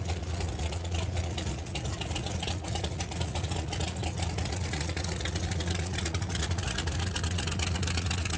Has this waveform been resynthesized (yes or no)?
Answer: yes